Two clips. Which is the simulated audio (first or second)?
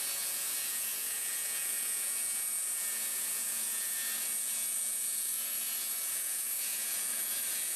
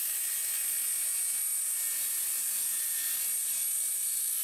first